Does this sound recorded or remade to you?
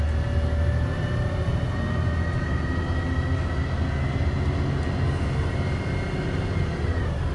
recorded